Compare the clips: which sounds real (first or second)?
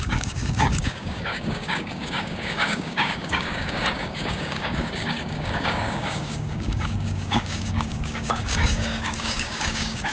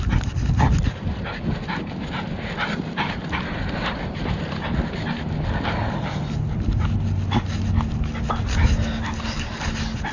second